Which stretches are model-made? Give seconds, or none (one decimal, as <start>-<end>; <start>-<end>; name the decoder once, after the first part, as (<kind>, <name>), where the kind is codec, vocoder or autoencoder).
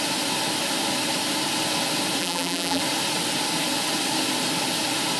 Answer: 2.2-2.8 (vocoder, BigVGAN v2)